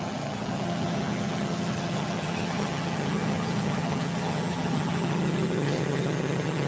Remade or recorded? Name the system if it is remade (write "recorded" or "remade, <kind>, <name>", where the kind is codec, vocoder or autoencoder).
remade, vocoder, HiFi-GAN